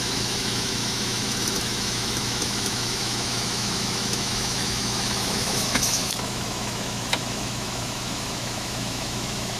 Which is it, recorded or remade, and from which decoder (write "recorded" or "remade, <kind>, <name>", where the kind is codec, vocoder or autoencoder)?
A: remade, autoencoder, DAC-VAE